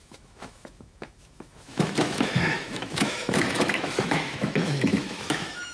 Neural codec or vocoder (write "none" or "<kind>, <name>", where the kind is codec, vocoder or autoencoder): autoencoder, DAC-VAE